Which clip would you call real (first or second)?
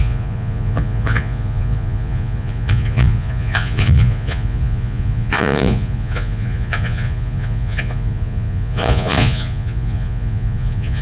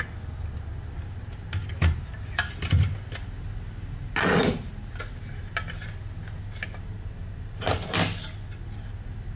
second